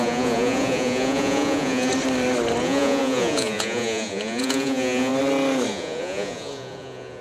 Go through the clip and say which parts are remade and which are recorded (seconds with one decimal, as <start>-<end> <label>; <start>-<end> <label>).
0.0-1.9 remade; 1.9-2.6 recorded; 2.6-5.1 remade; 5.1-5.7 recorded; 5.7-7.2 remade